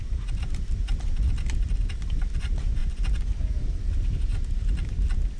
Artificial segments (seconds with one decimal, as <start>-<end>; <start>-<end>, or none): 0.0-2.8; 3.4-4.3